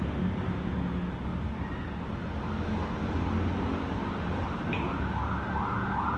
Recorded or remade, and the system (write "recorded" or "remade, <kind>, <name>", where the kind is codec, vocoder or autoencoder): recorded